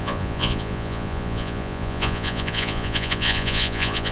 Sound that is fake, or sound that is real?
fake